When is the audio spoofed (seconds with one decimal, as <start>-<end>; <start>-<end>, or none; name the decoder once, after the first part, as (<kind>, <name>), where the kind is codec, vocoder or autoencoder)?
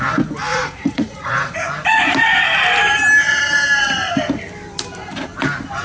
0.5-1.7 (vocoder, Vocos)